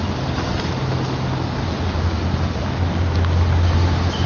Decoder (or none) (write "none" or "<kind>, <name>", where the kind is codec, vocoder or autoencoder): none